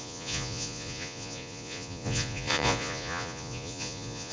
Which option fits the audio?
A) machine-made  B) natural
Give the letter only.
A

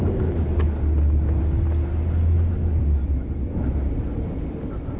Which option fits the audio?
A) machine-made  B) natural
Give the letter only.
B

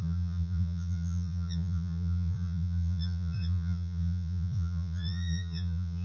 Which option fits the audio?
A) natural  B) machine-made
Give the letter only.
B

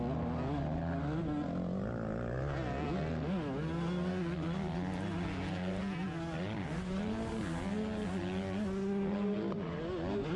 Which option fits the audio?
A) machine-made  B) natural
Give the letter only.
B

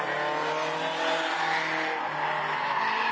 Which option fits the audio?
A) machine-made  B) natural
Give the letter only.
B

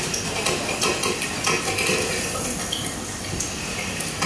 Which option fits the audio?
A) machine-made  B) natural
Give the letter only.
B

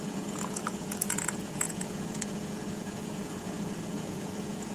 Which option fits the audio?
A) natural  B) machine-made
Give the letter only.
B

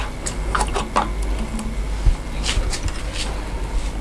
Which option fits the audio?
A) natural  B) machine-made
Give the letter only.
A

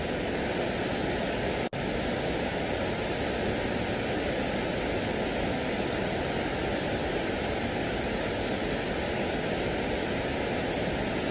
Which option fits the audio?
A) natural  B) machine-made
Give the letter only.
A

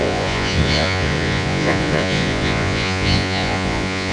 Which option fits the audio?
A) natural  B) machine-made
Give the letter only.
B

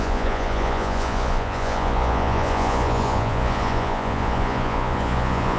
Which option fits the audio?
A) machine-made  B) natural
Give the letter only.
A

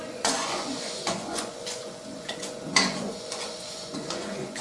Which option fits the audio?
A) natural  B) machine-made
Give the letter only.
B